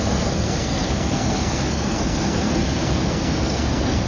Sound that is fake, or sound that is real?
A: fake